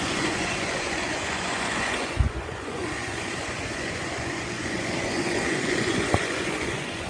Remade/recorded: remade